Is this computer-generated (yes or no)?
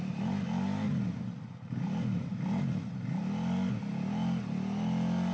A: no